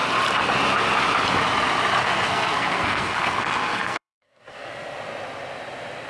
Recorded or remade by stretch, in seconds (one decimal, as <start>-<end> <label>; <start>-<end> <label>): 0.0-2.0 recorded; 2.0-4.7 remade; 4.7-6.1 recorded